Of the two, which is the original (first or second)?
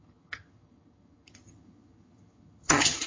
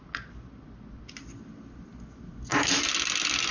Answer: second